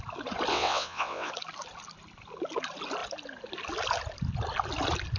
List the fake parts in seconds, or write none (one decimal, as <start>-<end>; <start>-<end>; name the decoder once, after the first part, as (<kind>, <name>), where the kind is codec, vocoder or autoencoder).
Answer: 0.5-1.3 (vocoder, WaveNeXt)